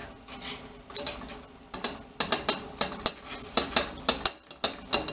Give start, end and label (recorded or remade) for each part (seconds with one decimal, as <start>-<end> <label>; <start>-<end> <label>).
0.0-5.1 recorded